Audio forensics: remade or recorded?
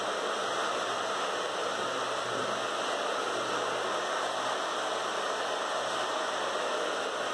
recorded